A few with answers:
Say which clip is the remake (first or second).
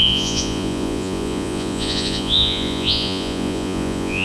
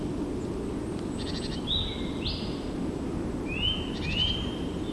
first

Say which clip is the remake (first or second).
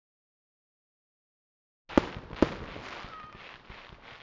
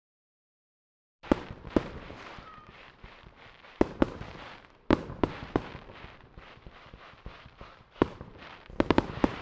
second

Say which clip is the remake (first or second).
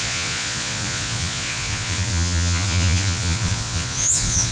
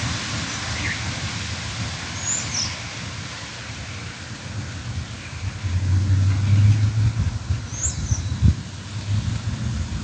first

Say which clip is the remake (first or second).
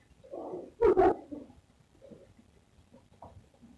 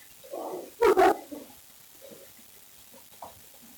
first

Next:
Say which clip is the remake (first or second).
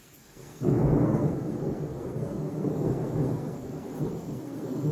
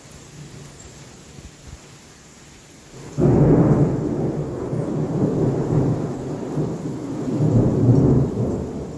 first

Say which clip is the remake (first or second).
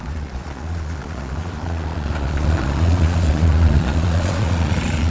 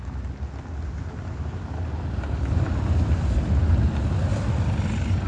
first